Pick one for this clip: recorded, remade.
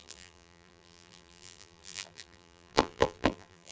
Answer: remade